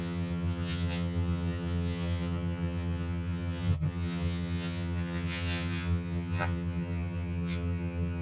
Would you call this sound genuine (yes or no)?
no